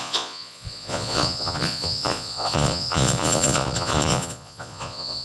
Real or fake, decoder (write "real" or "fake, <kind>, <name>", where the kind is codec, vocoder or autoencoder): fake, vocoder, Vocos